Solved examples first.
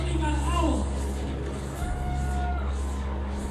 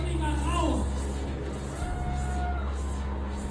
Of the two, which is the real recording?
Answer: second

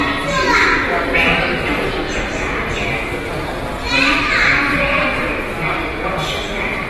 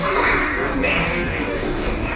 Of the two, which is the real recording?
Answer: first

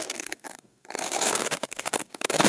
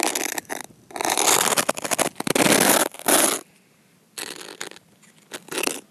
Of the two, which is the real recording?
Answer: second